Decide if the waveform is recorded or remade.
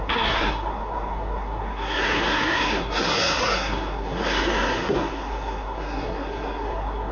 remade